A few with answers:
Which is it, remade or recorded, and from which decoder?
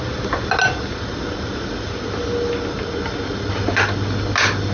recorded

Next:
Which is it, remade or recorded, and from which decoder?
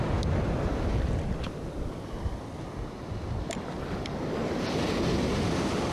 recorded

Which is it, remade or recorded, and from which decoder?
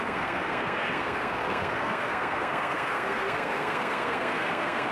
remade, codec, SNAC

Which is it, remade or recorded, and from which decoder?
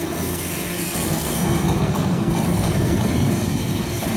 remade, codec, SNAC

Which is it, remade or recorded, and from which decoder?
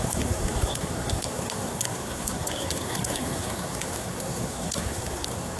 remade, codec, SNAC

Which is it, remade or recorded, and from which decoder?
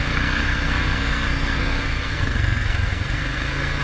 remade, codec, SNAC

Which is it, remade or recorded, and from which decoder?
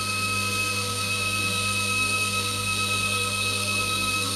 remade, codec, SNAC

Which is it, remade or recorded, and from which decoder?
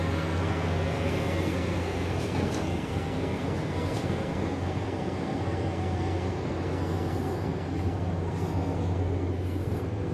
remade, codec, SNAC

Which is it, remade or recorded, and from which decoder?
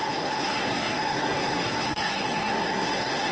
remade, codec, SNAC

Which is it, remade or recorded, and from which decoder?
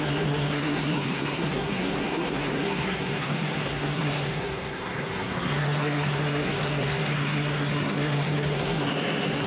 remade, codec, SNAC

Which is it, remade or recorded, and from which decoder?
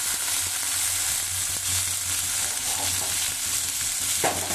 recorded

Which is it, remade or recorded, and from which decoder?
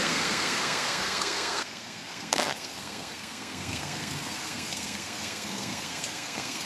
remade, codec, SNAC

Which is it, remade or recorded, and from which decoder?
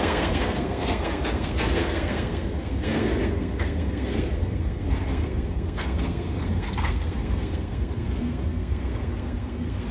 remade, codec, SNAC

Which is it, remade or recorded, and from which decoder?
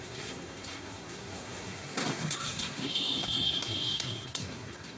remade, codec, SNAC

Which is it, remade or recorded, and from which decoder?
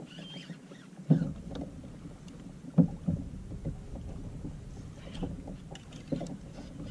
recorded